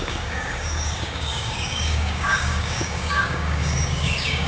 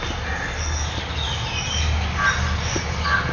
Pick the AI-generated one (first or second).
first